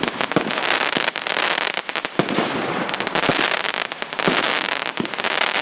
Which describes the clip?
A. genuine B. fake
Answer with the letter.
B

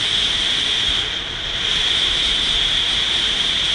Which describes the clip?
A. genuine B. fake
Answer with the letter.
B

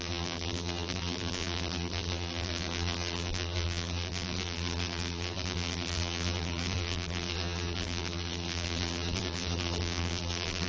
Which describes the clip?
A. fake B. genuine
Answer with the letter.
A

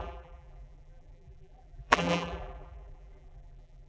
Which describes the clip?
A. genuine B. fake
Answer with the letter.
B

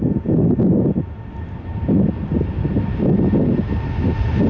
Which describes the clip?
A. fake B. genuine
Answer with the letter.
B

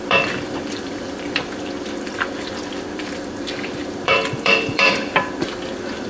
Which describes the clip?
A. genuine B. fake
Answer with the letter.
B